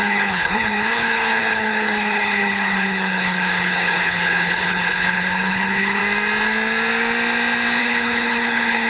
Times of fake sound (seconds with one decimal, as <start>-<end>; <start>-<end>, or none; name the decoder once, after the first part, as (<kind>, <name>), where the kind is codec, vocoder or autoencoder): 0.0-6.0 (codec, HILCodec); 7.8-8.9